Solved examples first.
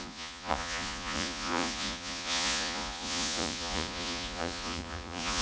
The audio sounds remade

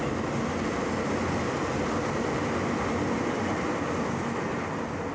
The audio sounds recorded